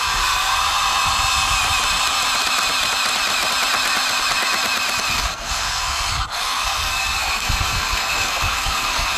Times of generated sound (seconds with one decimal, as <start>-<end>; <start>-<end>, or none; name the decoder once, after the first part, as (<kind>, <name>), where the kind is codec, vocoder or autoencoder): 0.0-0.5 (codec, SNAC); 5.1-9.2